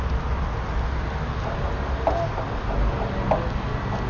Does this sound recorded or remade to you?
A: recorded